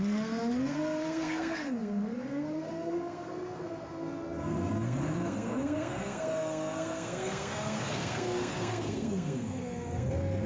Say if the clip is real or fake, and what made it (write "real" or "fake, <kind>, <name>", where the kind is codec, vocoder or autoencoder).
fake, codec, SNAC